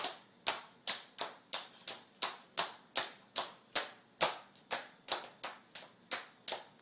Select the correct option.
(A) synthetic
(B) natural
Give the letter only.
B